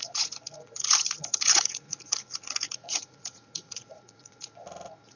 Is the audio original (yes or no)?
no